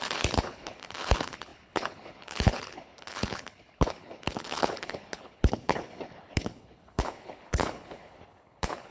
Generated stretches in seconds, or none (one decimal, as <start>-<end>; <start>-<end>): 0.0-8.9

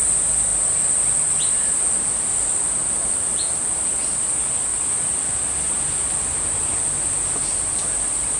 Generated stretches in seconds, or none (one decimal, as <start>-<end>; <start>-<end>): 0.5-1.5